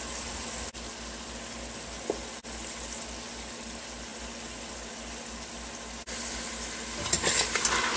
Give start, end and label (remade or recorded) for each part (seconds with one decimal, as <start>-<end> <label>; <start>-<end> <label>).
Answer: 0.0-8.0 recorded